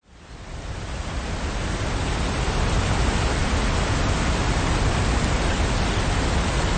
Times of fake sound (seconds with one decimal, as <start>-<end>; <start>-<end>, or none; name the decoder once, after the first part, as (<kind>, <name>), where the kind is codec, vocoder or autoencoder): none